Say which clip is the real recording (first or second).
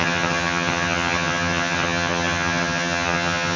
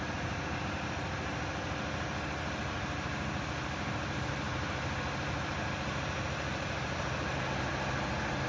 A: second